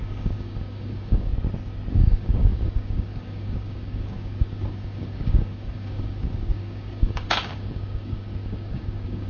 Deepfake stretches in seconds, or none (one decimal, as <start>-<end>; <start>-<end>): 0.0-1.3; 1.9-9.3